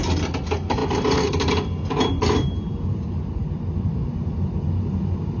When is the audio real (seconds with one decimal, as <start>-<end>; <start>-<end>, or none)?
0.0-5.4